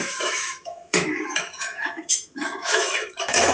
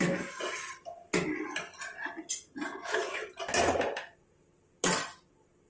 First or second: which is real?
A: second